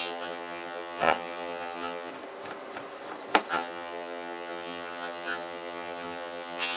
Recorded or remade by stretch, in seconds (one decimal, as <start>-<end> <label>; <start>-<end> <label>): 0.0-2.1 remade; 2.1-3.5 recorded; 3.5-6.8 remade